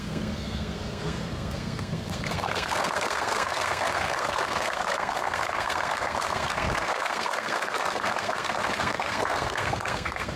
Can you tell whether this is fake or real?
fake